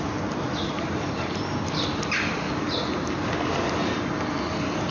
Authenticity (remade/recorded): recorded